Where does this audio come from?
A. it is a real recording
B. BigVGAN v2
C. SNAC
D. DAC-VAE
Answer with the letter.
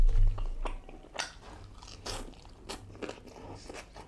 A